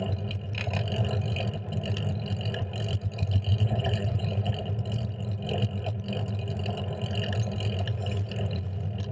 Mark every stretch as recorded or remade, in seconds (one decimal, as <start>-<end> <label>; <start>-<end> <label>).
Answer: 0.0-3.5 recorded; 3.5-4.5 remade; 4.5-9.1 recorded